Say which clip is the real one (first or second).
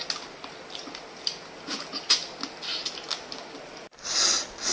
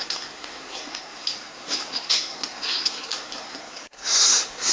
first